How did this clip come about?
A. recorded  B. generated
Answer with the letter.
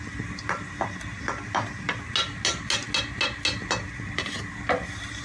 A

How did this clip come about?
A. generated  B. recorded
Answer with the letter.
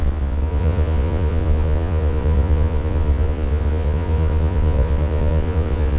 A